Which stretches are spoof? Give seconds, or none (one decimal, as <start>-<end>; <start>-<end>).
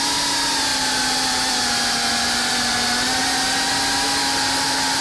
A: 0.7-3.7; 4.2-5.0